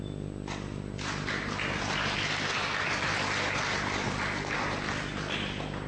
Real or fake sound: real